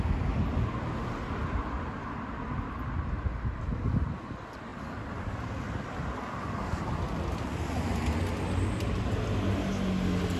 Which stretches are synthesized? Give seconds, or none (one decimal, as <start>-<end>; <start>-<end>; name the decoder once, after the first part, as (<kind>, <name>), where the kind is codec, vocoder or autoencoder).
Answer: none